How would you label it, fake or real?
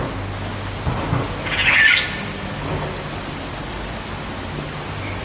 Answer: real